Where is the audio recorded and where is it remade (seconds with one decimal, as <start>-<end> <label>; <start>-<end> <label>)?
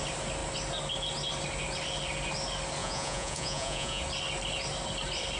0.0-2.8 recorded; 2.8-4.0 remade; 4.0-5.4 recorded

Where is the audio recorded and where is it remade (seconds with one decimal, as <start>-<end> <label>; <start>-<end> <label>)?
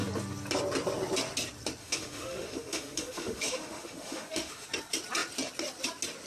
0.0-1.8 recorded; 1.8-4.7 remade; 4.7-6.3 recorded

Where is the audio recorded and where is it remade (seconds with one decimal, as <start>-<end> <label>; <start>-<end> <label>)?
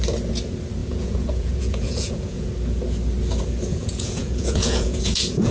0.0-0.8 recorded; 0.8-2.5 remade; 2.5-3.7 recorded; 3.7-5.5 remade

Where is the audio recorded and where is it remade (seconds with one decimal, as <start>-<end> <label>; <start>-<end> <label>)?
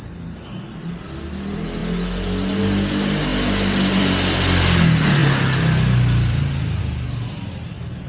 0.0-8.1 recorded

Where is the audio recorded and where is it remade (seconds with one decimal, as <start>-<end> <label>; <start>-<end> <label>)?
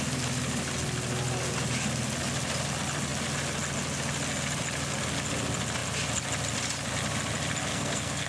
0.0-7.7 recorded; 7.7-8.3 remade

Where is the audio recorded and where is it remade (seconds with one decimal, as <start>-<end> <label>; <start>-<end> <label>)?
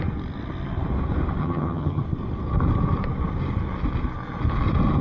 0.0-1.4 recorded; 1.4-2.0 remade; 2.0-5.0 recorded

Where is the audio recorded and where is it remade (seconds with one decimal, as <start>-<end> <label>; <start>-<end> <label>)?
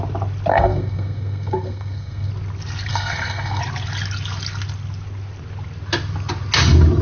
0.0-0.5 recorded; 0.5-2.3 remade; 2.3-2.9 recorded; 2.9-3.6 remade; 3.6-7.0 recorded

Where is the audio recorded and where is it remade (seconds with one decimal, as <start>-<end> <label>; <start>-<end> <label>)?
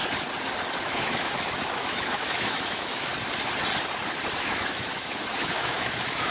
0.0-0.8 recorded; 0.8-3.1 remade; 3.1-4.4 recorded; 4.4-6.3 remade